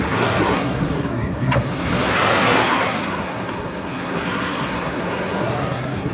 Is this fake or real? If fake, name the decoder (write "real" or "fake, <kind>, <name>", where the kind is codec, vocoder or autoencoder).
fake, codec, SNAC